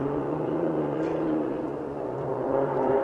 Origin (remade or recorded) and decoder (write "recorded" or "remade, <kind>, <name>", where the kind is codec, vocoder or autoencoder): remade, vocoder, Vocos